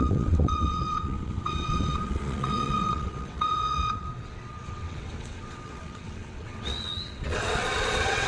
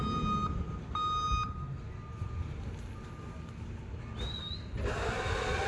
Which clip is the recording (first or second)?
second